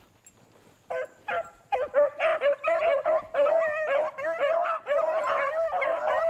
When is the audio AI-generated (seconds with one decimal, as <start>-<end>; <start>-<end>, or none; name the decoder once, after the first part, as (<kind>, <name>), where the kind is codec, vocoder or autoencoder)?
none

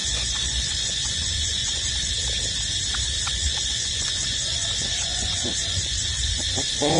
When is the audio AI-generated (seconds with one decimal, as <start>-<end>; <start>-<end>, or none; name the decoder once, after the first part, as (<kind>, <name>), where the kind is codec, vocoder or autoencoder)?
0.0-2.1 (vocoder, Vocos); 3.3-7.0

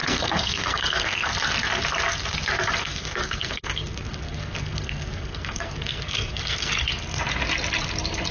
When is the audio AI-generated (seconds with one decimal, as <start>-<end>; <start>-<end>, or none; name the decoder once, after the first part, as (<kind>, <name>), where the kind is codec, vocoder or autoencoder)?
0.0-1.3 (codec, SNAC); 2.8-6.7

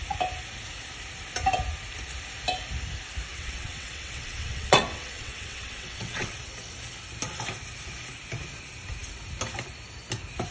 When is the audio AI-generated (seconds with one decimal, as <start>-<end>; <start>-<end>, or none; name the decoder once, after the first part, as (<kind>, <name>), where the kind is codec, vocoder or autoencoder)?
3.3-6.4 (vocoder, WaveNeXt)

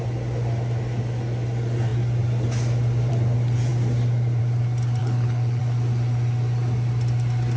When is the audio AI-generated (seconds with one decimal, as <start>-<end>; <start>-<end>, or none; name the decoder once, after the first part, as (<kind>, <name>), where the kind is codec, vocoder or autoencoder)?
5.0-5.6 (codec, HILCodec)

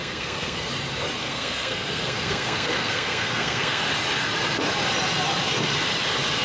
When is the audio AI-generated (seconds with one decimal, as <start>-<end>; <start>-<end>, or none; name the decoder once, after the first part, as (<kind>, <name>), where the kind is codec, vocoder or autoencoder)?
0.0-0.7 (codec, SNAC); 1.2-3.8